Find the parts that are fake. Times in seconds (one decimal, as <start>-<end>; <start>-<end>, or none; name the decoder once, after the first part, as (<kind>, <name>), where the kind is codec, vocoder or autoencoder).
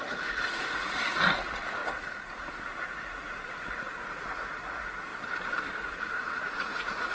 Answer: 0.0-1.8 (vocoder, Vocos); 2.8-5.1; 5.7-7.1